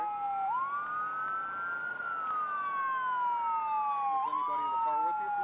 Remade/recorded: recorded